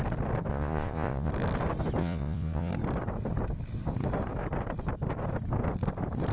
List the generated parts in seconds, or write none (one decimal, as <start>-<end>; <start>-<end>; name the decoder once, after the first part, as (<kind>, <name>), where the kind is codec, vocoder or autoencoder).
0.5-1.3 (vocoder, Vocos); 2.0-2.7